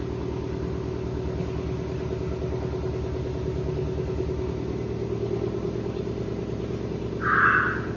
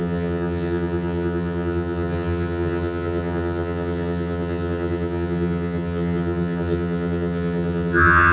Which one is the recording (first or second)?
first